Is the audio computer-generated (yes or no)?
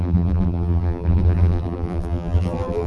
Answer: yes